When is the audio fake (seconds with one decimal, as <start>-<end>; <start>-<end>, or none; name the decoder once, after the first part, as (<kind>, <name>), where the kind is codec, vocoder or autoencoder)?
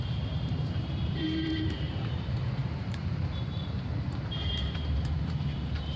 0.0-6.0 (vocoder, BigVGAN v2)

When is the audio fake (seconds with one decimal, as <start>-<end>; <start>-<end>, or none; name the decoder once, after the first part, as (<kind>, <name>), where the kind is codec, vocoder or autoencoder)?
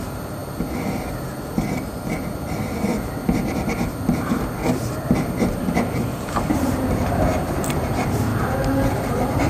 0.0-8.3 (vocoder, BigVGAN v2); 8.9-9.5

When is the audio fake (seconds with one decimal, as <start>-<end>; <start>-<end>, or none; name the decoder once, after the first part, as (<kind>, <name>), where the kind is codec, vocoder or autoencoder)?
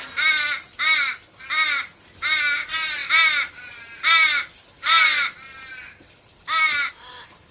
none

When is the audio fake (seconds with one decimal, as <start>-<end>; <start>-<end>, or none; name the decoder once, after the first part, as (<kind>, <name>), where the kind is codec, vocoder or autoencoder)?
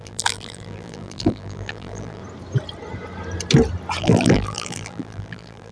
0.0-2.2 (vocoder, BigVGAN v2); 4.0-5.7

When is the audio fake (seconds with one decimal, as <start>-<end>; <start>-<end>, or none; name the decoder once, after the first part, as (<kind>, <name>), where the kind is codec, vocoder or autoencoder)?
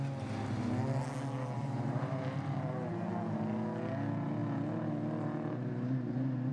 1.6-2.9 (vocoder, BigVGAN v2)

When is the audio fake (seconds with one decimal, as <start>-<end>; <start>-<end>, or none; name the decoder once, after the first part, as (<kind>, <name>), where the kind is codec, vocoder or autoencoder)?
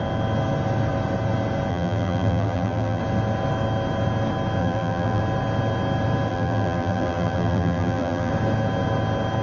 1.7-3.0 (vocoder, BigVGAN v2); 4.6-5.2; 6.3-8.3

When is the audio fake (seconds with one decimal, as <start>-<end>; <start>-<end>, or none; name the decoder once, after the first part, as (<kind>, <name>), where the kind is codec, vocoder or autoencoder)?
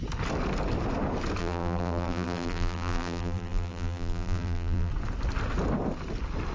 1.4-4.9 (vocoder, BigVGAN v2)